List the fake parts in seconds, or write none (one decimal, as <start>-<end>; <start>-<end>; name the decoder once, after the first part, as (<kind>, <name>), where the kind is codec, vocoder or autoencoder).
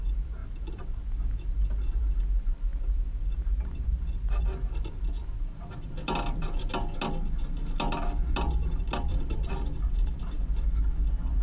none